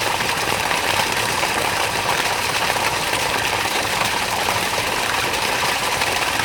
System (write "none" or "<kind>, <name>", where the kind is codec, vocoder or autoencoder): vocoder, BigVGAN v2